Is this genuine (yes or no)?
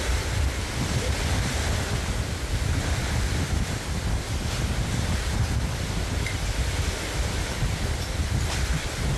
yes